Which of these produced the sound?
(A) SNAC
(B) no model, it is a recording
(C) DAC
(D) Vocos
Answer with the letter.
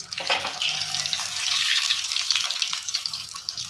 C